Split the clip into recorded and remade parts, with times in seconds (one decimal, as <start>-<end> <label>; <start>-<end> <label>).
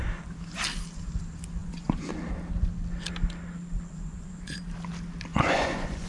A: 0.0-1.6 recorded; 1.6-2.1 remade; 2.1-3.9 recorded; 3.9-4.6 remade; 4.6-5.3 recorded; 5.3-6.1 remade